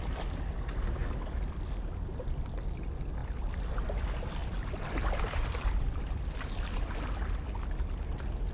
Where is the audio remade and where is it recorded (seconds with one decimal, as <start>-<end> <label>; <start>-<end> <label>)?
0.0-3.2 recorded; 3.2-3.7 remade; 3.7-4.4 recorded; 4.4-6.9 remade; 6.9-8.5 recorded